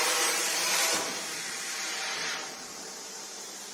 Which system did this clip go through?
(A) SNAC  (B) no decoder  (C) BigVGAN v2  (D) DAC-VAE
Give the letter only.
C